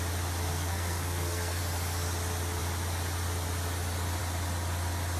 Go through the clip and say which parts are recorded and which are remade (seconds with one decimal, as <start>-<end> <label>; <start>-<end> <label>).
0.0-0.5 recorded; 0.5-1.6 remade; 1.6-5.2 recorded